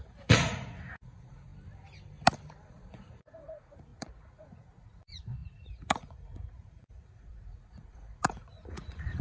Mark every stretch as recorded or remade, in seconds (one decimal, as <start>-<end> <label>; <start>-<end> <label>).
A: 0.0-1.5 remade; 1.5-2.9 recorded; 2.9-9.2 remade